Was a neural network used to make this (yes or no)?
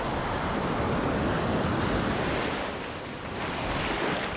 no